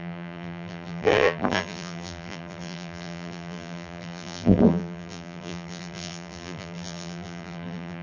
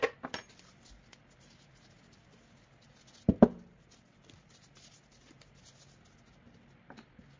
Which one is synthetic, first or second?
first